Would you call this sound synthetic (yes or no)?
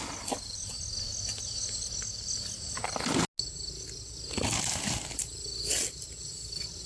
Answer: no